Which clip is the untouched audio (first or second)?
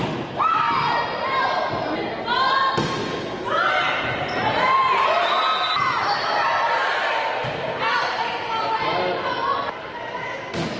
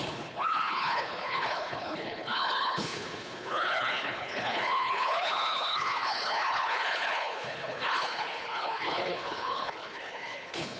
first